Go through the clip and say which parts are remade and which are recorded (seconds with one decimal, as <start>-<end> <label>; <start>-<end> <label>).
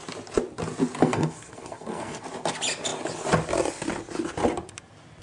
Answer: 0.0-1.0 recorded; 1.0-2.2 remade; 2.2-5.2 recorded